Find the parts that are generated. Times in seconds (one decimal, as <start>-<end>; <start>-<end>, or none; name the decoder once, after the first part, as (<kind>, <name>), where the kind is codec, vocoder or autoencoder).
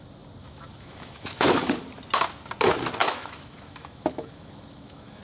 0.4-1.7 (autoencoder, DAC-VAE); 3.0-5.2